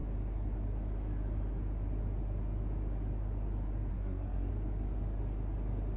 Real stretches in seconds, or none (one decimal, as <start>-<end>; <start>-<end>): 0.0-3.9; 4.5-6.0